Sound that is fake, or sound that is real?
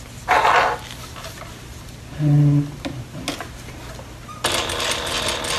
real